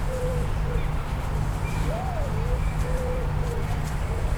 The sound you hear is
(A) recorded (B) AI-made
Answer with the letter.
B